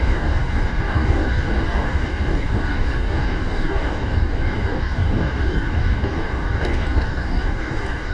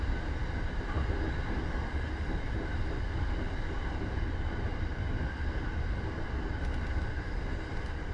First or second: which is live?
second